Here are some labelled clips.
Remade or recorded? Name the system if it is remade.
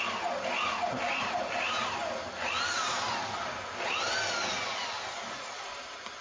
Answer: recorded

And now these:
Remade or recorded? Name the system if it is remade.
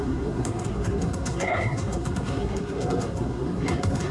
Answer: remade, codec, SNAC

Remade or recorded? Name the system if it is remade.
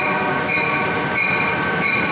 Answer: recorded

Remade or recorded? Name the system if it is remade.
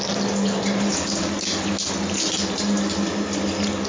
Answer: recorded